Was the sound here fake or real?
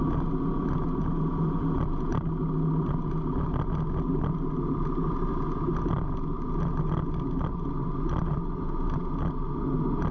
real